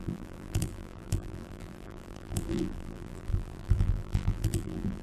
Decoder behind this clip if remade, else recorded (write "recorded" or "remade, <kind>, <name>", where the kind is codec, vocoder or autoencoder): remade, vocoder, BigVGAN v2